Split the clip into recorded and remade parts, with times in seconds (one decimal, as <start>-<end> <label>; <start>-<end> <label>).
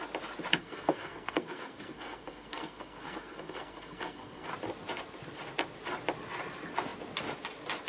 0.0-0.6 recorded; 0.6-4.5 remade; 4.5-7.9 recorded